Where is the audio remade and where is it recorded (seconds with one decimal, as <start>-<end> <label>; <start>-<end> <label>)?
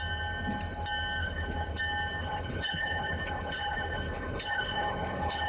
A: 0.0-1.2 recorded; 1.2-1.8 remade; 1.8-2.2 recorded; 2.2-5.5 remade